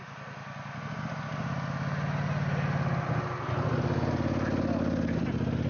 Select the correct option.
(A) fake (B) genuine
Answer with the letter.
B